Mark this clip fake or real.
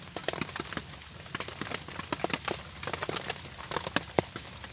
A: real